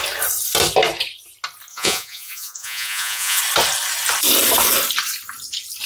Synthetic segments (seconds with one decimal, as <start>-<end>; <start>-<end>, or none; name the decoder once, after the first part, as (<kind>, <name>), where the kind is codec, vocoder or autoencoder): 1.7-3.4 (vocoder, Vocos)